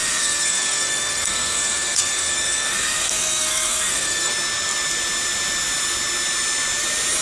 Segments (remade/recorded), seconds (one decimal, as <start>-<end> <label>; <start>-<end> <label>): 0.0-4.3 remade; 4.3-7.2 recorded